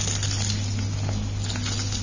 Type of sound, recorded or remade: recorded